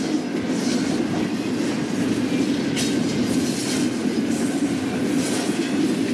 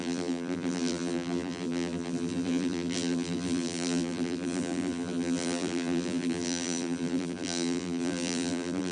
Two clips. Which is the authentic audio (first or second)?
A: first